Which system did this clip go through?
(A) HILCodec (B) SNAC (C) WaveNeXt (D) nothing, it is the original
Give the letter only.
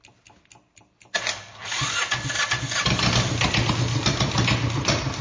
D